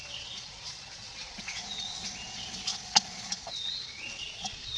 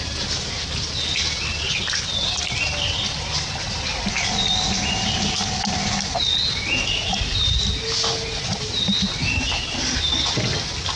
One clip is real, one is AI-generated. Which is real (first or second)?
second